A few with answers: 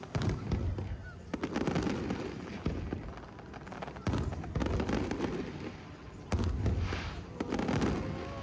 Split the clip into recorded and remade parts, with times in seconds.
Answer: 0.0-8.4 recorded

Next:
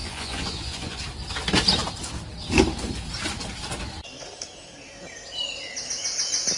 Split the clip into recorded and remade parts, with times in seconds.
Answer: 0.0-1.0 remade; 1.0-6.6 recorded

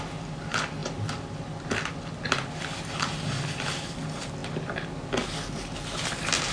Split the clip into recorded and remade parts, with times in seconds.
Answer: 0.0-6.5 recorded

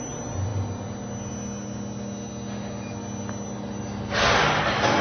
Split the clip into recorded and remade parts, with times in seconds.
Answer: 0.0-5.0 recorded

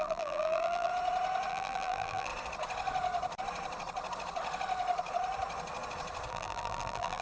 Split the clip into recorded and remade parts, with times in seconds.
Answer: 0.0-0.9 remade; 0.9-1.5 recorded; 1.5-2.3 remade; 2.3-6.3 recorded; 6.3-7.2 remade

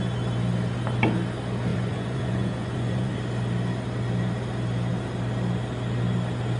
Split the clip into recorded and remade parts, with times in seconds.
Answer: 0.0-1.7 recorded; 1.7-3.1 remade; 3.1-6.6 recorded

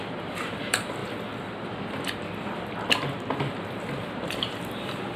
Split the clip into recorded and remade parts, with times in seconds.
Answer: 0.0-1.0 remade; 1.0-4.1 recorded; 4.1-5.2 remade